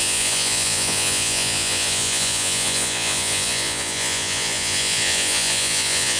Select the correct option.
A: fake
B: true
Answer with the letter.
A